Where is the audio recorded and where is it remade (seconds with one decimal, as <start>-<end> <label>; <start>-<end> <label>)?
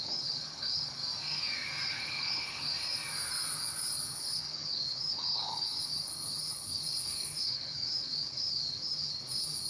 0.0-1.0 remade; 1.0-1.9 recorded; 1.9-2.7 remade; 2.7-4.0 recorded; 4.0-9.7 remade